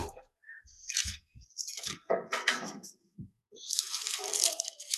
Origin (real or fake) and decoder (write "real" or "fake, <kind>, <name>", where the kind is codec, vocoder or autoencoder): fake, codec, SNAC